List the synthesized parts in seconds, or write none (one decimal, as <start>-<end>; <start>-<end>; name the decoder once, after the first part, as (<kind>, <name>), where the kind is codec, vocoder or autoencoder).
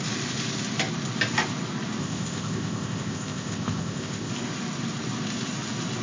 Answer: 2.0-4.3 (codec, ZipCodec)